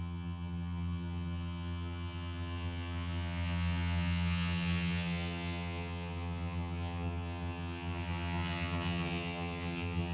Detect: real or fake fake